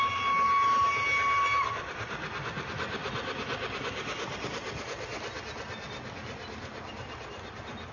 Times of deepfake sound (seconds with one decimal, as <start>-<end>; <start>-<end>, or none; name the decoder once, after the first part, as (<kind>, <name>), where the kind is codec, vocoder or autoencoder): none

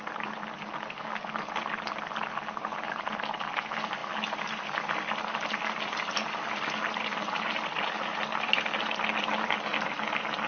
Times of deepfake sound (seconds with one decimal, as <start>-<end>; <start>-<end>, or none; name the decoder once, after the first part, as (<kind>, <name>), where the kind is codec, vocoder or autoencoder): none

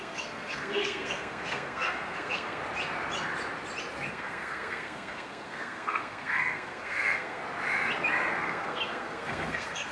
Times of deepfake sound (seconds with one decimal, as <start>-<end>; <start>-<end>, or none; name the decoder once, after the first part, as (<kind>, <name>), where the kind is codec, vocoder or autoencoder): 0.0-2.6 (codec, SNAC); 4.1-7.4; 8.3-9.9

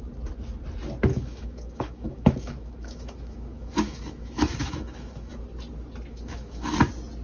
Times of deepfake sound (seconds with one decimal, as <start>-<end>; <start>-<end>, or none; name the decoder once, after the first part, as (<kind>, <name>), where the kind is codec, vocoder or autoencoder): 1.1-5.4 (autoencoder, DAC-VAE); 6.1-6.7

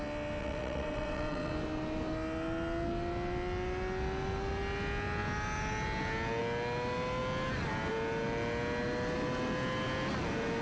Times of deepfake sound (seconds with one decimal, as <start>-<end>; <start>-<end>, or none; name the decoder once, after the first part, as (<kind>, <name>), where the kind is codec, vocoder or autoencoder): 0.4-1.5 (vocoder, WaveNeXt)

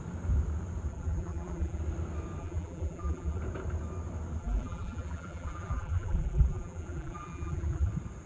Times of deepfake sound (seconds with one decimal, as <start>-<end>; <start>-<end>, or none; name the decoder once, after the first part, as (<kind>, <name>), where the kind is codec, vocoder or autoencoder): 0.9-1.8 (vocoder, BigVGAN v2); 2.4-3.4; 4.4-7.9

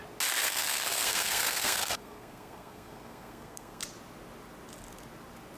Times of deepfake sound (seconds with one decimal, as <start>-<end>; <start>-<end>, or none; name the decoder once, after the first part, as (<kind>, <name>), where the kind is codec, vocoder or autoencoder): 0.4-3.8 (codec, SNAC)